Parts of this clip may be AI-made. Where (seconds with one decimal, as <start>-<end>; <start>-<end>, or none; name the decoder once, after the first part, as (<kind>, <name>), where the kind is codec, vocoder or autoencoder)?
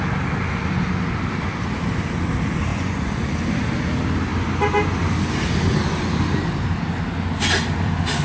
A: 2.7-3.3 (vocoder, Vocos)